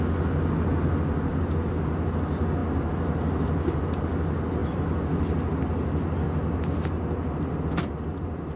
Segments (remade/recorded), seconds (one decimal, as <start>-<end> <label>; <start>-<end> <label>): 0.0-8.6 recorded